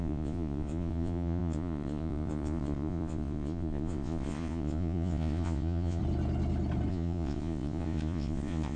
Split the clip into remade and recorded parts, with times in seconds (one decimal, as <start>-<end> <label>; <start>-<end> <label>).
0.0-6.0 remade; 6.0-6.9 recorded; 6.9-8.8 remade